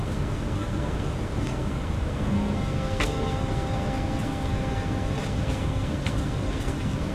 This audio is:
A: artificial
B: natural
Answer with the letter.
A